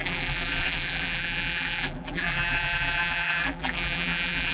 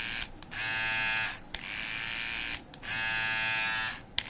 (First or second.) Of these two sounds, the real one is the second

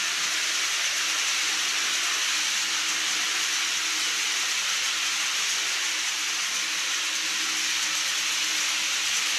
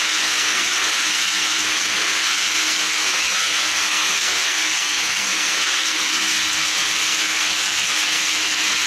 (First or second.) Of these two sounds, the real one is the first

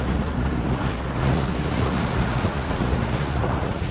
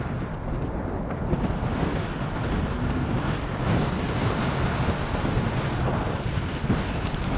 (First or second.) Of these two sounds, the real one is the second